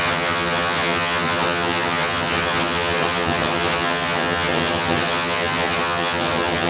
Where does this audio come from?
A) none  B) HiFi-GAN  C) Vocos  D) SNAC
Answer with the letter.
B